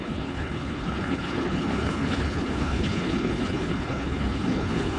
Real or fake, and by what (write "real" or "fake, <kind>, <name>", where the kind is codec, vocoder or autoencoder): fake, codec, HILCodec